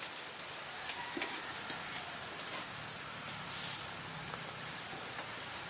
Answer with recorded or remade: recorded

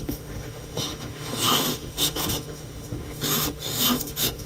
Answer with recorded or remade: remade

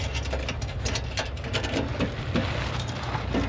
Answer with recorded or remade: recorded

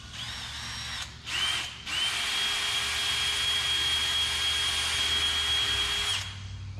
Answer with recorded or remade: recorded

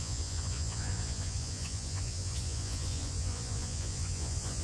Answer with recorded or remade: remade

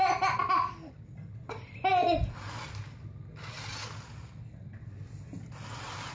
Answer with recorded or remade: recorded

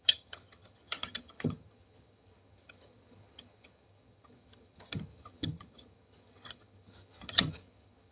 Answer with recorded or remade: remade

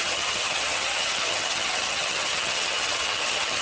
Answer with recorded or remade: remade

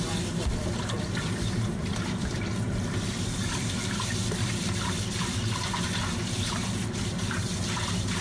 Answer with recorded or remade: remade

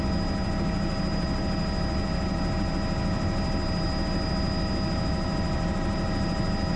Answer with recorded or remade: recorded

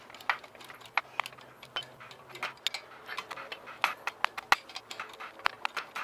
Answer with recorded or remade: recorded